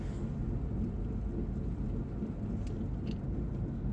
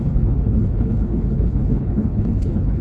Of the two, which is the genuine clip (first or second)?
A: first